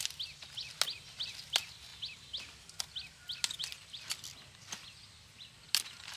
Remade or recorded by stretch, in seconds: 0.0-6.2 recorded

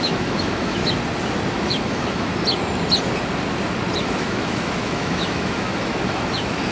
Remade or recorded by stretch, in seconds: 0.0-0.8 remade; 0.8-1.5 recorded; 1.5-2.3 remade; 2.3-4.0 recorded; 4.0-6.7 remade

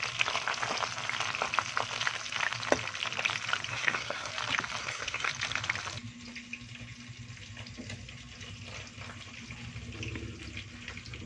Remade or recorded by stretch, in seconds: 0.0-3.7 recorded; 3.7-4.3 remade; 4.3-4.8 recorded; 4.8-5.3 remade; 5.3-11.3 recorded

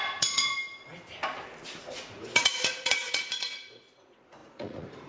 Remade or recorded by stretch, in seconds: 0.0-0.5 remade; 0.5-1.8 recorded; 1.8-5.1 remade

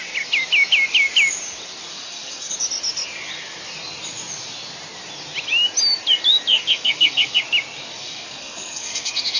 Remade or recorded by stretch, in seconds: 0.0-1.9 recorded; 1.9-2.5 remade; 2.5-6.5 recorded; 6.5-7.4 remade; 7.4-7.9 recorded; 7.9-9.4 remade